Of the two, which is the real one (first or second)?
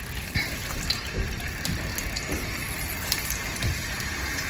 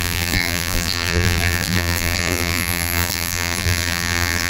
first